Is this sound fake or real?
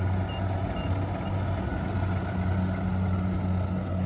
real